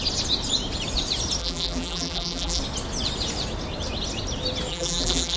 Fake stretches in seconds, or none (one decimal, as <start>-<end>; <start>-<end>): 1.4-2.6; 4.7-5.4